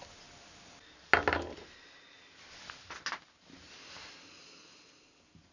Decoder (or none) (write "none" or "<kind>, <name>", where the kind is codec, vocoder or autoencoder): none